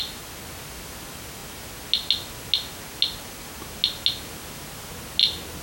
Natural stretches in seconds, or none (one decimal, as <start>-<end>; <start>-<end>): 0.0-5.6